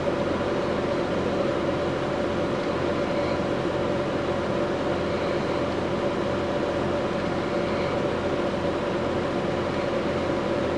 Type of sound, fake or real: real